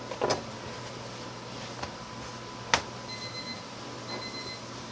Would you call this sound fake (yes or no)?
no